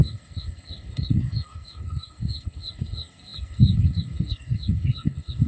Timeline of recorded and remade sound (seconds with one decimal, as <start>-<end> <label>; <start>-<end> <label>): 0.0-5.5 remade